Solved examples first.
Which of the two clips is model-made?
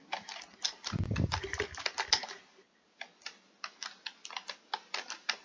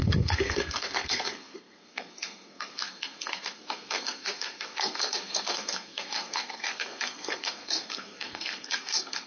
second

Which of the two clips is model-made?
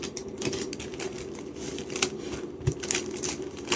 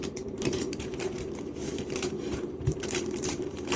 second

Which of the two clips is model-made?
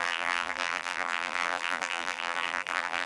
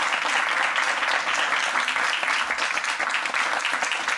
first